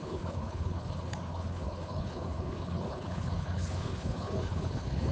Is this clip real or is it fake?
fake